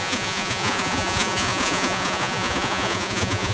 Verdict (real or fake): fake